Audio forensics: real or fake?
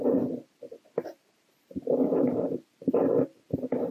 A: real